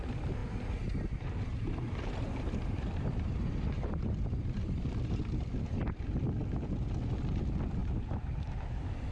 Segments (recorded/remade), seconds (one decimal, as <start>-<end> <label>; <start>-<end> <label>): 0.0-1.5 recorded; 1.5-5.2 remade; 5.2-7.8 recorded; 7.8-8.4 remade; 8.4-9.1 recorded